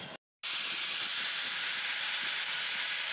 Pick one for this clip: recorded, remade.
recorded